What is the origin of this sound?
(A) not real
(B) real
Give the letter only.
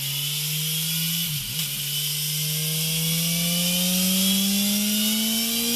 B